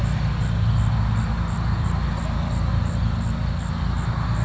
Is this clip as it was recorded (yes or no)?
yes